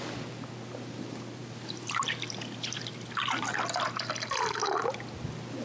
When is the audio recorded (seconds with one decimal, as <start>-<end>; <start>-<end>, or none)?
0.0-5.6